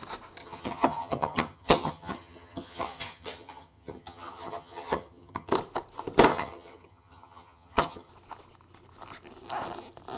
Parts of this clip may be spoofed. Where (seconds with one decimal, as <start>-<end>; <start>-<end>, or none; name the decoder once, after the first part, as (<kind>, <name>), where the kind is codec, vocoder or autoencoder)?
0.4-5.5 (vocoder, HiFi-GAN); 6.3-8.1